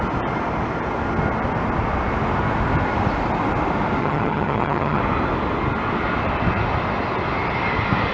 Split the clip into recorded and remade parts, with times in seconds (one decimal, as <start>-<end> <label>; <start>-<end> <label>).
0.0-4.0 recorded; 4.0-5.0 remade; 5.0-8.1 recorded